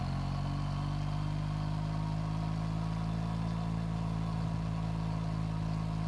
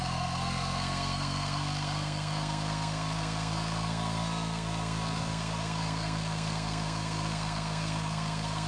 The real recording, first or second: first